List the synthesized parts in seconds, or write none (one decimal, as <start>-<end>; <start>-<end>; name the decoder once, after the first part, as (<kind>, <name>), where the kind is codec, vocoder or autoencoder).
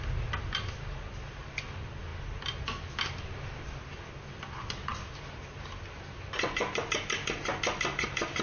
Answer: none